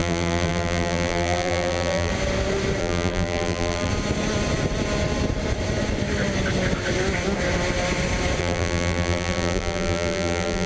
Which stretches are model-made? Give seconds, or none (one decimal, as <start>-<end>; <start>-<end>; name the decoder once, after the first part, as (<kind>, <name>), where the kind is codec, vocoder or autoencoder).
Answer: 0.0-2.1 (vocoder, BigVGAN v2); 2.8-3.9; 8.4-10.7